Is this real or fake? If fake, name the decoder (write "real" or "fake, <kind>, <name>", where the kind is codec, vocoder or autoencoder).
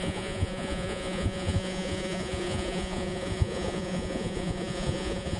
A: fake, vocoder, Vocos